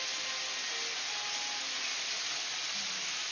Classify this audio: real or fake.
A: real